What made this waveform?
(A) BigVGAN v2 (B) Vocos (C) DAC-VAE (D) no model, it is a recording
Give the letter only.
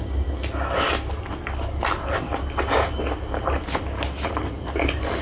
D